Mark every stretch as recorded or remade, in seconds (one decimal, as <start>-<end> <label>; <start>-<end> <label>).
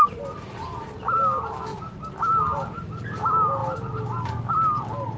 0.0-5.2 recorded